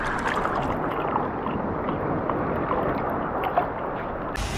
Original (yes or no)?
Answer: yes